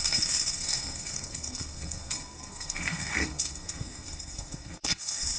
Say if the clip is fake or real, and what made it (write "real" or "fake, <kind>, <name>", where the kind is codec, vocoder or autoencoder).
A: fake, codec, SNAC